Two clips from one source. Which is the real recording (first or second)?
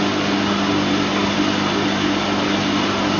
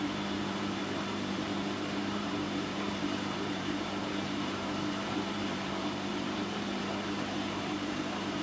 first